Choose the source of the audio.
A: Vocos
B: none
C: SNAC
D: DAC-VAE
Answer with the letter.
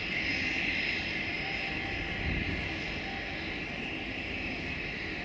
B